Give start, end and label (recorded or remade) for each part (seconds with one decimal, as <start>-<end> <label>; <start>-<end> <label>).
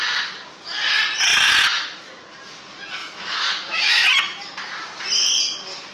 0.0-3.0 recorded; 3.0-4.1 remade; 4.1-5.9 recorded